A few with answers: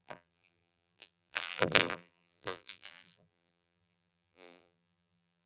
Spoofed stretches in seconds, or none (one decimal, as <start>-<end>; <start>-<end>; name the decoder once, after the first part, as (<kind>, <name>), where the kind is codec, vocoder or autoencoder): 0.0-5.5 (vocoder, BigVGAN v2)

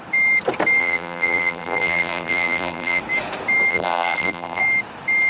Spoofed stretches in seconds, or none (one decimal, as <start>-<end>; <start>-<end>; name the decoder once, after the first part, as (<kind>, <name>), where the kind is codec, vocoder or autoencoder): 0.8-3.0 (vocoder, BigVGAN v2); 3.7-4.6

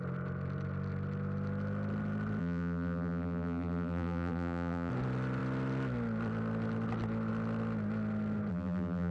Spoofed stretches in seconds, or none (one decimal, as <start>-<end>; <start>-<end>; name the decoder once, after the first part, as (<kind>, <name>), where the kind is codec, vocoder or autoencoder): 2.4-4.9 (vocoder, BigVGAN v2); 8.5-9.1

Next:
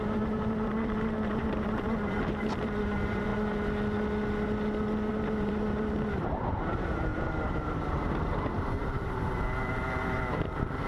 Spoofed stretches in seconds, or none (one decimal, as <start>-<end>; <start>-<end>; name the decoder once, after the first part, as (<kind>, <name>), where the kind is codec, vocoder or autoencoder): 0.0-3.3 (vocoder, BigVGAN v2); 5.1-10.9

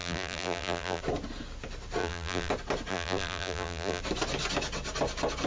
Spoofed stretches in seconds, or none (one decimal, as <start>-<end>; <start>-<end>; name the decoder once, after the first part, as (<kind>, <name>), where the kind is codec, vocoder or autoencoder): 0.0-1.0 (vocoder, BigVGAN v2); 2.0-2.5; 2.9-4.0

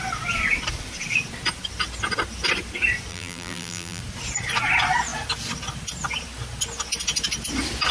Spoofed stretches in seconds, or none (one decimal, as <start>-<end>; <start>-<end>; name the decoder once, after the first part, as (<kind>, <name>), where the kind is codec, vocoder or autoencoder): 3.1-4.0 (vocoder, BigVGAN v2)

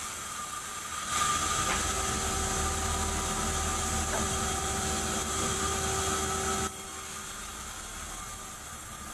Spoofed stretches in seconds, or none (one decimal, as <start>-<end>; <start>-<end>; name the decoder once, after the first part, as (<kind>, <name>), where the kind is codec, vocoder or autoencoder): 0.0-0.7 (vocoder, BigVGAN v2); 3.7-5.7